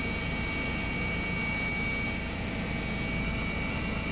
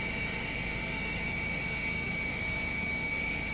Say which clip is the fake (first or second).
second